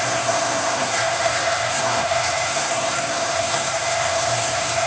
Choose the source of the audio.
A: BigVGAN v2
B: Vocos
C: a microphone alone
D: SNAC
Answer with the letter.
D